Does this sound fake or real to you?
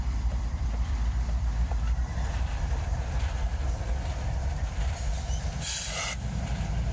fake